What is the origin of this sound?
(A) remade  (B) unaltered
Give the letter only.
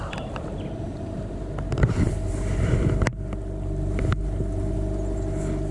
B